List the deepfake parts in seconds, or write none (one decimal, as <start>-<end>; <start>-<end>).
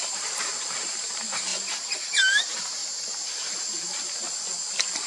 0.0-1.5; 2.4-2.8